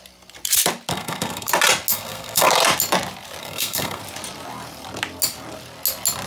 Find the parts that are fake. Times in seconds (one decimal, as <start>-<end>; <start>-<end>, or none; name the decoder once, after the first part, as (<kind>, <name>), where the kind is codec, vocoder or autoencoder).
0.9-1.5 (codec, SNAC); 1.9-2.5; 3.4-4.0